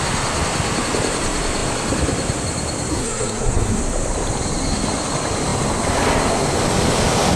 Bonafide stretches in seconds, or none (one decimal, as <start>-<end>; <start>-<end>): 0.0-2.9; 3.8-7.4